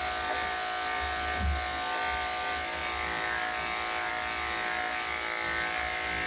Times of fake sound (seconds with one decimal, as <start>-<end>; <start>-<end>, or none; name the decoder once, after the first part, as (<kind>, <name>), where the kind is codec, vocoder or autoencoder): none